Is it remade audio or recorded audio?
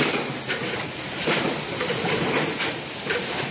remade